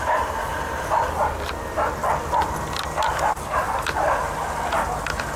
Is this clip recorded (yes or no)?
yes